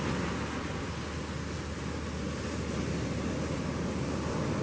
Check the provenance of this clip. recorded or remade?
recorded